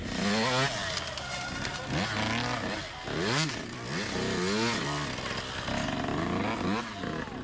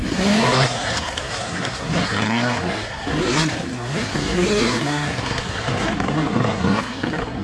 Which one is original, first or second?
first